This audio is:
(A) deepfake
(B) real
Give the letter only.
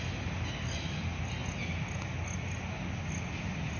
B